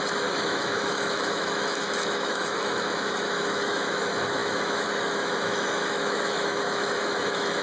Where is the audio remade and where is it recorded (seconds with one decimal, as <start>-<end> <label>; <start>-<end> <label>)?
0.0-7.6 remade